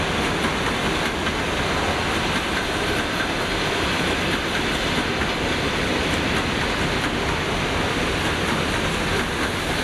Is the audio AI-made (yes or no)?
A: no